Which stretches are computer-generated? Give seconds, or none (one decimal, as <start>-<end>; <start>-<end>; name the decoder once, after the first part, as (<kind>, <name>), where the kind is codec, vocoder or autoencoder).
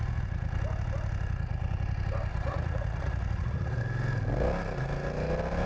2.3-3.8 (vocoder, Vocos)